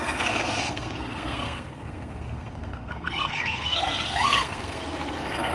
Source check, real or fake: fake